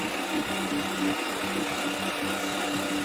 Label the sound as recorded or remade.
recorded